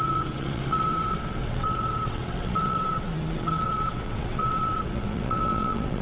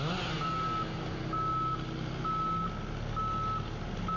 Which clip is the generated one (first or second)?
first